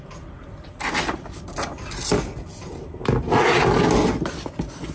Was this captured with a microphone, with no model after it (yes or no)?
yes